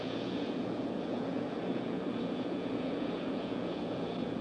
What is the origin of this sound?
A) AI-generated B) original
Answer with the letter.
A